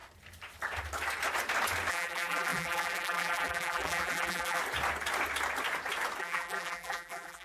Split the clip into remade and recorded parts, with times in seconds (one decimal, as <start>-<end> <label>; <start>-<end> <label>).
0.0-1.9 recorded; 1.9-4.6 remade; 4.6-6.2 recorded; 6.2-7.4 remade